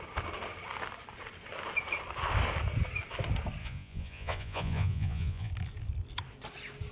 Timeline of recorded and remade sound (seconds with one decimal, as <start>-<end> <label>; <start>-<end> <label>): 0.0-3.6 recorded; 3.6-5.5 remade; 5.5-6.9 recorded